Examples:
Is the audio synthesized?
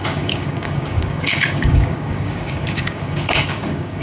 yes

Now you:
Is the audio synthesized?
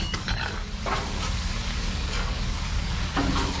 yes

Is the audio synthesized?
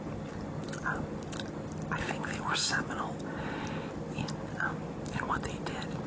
no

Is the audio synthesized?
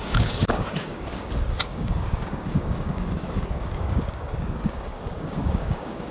yes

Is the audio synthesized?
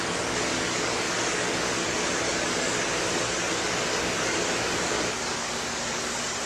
yes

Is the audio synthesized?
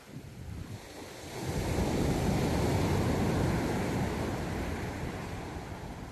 no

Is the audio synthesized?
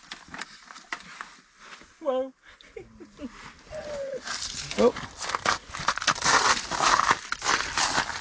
no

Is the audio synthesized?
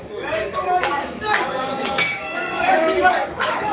yes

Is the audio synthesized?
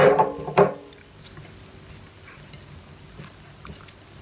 no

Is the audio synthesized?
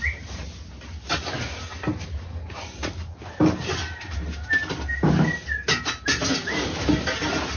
no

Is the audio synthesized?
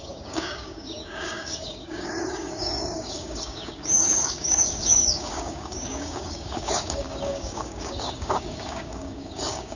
yes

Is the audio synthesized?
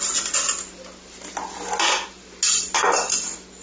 no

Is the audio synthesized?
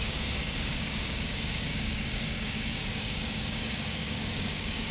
yes